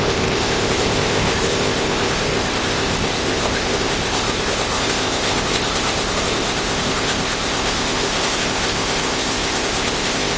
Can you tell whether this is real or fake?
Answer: fake